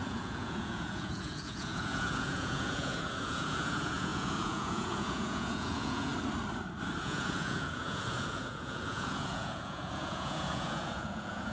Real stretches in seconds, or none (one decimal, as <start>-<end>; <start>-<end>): 6.1-7.0

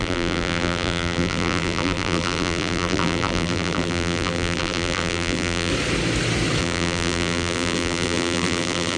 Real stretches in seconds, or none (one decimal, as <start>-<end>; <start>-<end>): 5.7-6.6

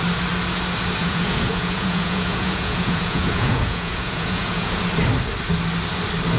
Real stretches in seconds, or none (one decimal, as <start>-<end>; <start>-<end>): 0.0-1.0; 4.8-6.4

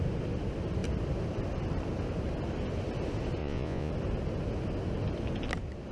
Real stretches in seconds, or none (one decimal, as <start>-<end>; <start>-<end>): 0.0-3.4; 3.9-5.9

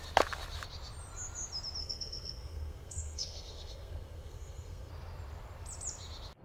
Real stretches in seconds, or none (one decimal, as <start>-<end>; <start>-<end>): 0.0-1.8; 4.9-6.4